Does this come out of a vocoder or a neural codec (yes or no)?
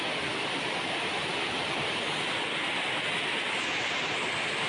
no